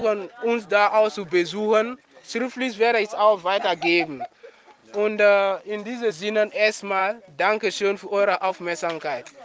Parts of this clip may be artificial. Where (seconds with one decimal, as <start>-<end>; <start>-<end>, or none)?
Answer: none